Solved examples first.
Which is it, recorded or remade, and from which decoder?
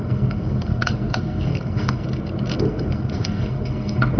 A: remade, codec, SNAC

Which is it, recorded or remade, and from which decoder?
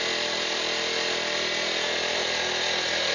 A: recorded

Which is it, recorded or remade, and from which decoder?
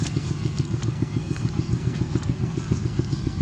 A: remade, codec, SNAC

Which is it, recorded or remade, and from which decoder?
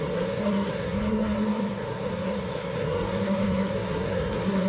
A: remade, codec, SNAC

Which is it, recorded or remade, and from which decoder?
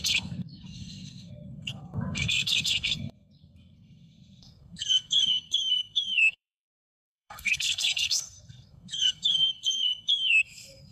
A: remade, codec, SNAC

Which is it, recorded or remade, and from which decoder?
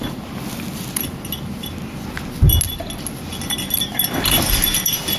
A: recorded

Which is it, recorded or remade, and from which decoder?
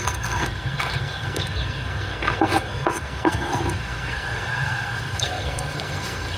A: remade, codec, SNAC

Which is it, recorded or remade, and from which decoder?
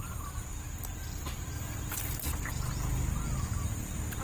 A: recorded